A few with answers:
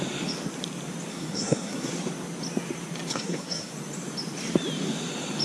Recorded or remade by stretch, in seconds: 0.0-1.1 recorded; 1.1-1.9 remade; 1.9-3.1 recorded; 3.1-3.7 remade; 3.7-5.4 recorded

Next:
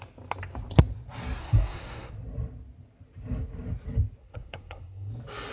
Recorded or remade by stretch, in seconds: 0.0-1.4 recorded; 1.4-2.1 remade; 2.1-4.2 recorded; 4.2-5.1 remade; 5.1-5.5 recorded

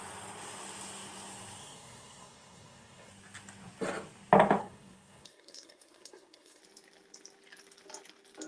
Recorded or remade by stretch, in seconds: 0.0-1.6 recorded; 1.6-3.1 remade; 3.1-4.6 recorded; 4.6-6.6 remade; 6.6-8.5 recorded

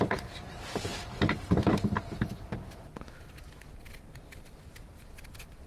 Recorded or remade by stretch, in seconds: 0.0-5.7 recorded

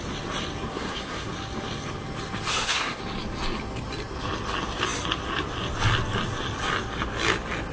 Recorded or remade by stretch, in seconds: 0.0-0.7 recorded; 0.7-1.3 remade; 1.3-2.5 recorded; 2.5-3.0 remade; 3.0-7.7 recorded

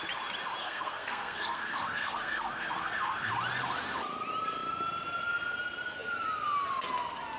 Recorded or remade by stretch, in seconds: 0.0-0.6 recorded; 0.6-3.3 remade; 3.3-7.4 recorded

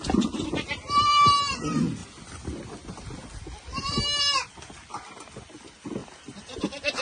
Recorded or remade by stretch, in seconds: 0.0-7.0 recorded